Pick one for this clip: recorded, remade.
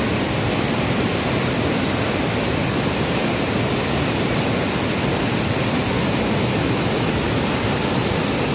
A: recorded